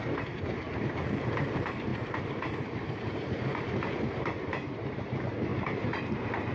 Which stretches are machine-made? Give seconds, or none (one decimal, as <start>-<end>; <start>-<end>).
0.0-3.5; 4.2-6.5